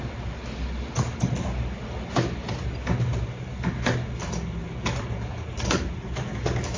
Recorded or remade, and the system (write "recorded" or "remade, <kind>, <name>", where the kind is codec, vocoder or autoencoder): recorded